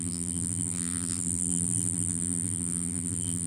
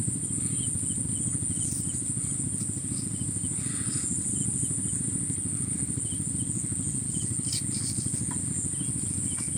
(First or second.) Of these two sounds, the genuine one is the second